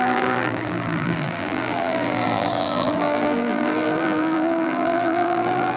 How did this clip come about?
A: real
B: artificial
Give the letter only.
B